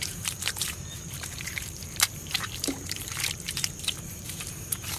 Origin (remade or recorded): remade